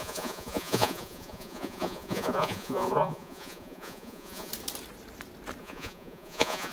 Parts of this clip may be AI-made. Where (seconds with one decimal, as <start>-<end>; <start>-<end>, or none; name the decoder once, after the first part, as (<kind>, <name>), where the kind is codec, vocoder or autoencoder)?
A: 0.0-4.5 (vocoder, Vocos); 5.6-6.7